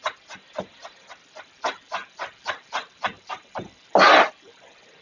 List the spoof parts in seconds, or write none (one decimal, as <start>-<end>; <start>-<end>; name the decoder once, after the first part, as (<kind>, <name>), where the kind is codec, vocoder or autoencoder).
none